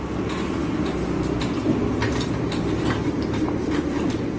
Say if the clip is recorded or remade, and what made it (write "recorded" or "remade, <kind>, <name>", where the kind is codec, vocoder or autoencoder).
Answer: recorded